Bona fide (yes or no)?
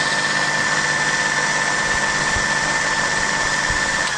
yes